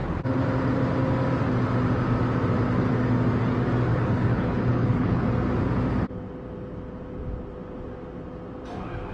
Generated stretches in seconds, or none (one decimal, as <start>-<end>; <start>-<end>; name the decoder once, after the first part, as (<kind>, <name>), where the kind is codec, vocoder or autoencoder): 3.9-5.2 (codec, HILCodec)